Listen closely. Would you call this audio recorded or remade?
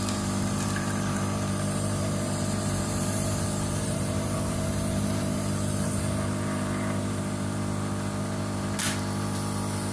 remade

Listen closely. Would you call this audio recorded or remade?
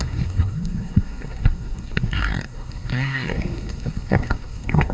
remade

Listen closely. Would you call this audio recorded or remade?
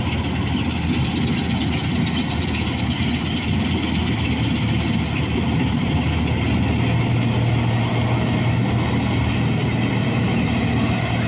recorded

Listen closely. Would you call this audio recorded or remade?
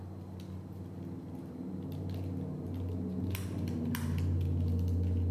recorded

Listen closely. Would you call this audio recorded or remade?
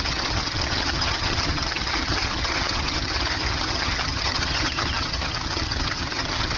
remade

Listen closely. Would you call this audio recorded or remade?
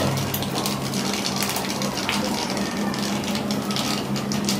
recorded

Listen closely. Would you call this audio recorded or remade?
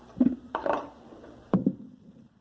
remade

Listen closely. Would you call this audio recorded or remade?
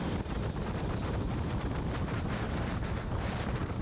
recorded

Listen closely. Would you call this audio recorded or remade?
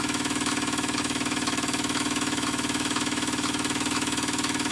remade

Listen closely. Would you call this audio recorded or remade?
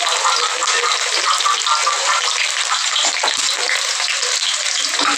recorded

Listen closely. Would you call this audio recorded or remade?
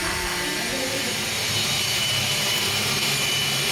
remade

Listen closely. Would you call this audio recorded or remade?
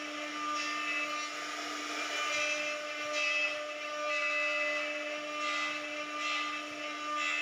recorded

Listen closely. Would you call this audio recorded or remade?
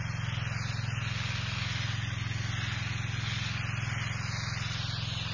recorded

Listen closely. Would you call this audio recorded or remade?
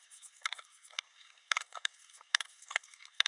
remade